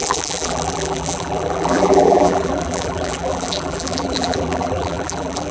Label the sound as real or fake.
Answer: fake